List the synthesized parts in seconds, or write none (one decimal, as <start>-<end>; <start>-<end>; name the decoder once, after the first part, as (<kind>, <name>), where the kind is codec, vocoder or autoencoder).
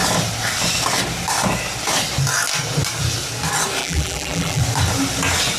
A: 3.8-4.6 (vocoder, BigVGAN v2)